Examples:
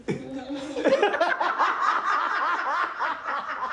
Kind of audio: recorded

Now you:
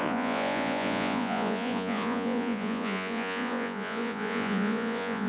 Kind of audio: remade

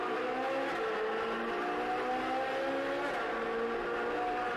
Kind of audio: recorded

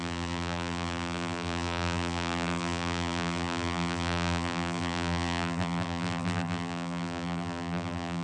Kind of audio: remade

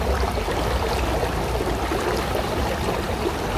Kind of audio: recorded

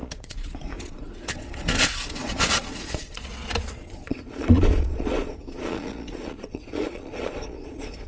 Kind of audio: remade